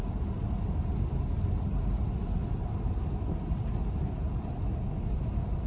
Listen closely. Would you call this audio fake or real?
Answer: real